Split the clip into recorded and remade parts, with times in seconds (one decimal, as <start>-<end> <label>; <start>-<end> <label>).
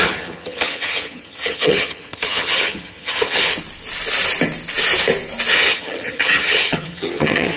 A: 0.0-3.5 remade; 3.5-5.5 recorded; 5.5-7.6 remade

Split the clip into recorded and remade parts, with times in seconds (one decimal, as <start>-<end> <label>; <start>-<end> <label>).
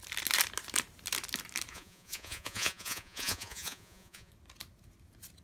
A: 0.0-1.7 recorded; 1.7-4.3 remade; 4.3-5.4 recorded